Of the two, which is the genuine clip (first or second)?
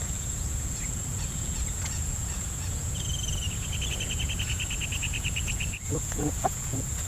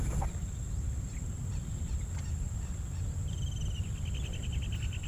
second